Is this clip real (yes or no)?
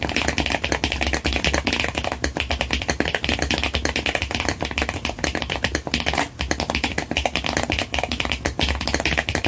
yes